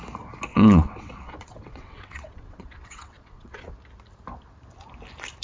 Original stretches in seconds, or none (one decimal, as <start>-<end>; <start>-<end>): 0.0-0.5; 3.7-5.4